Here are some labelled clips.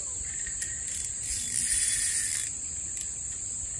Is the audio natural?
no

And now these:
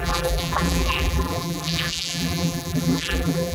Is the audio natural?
no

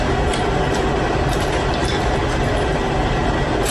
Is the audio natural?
yes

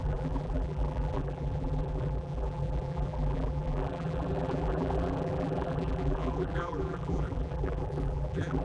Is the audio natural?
no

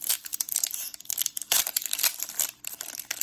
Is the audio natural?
no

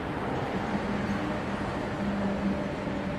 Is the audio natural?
yes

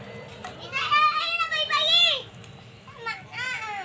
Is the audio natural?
yes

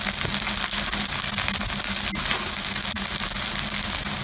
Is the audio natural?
yes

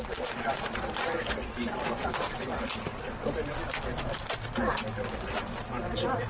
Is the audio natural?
yes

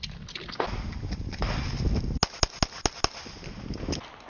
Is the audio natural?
yes